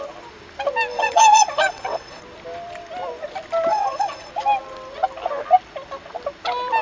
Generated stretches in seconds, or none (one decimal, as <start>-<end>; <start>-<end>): 0.9-2.2; 3.7-4.3

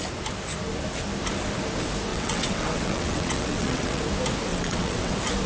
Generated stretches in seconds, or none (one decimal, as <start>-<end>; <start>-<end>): 2.1-4.0; 4.5-5.1